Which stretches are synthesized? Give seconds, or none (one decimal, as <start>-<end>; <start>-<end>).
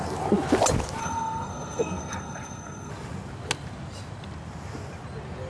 1.0-2.9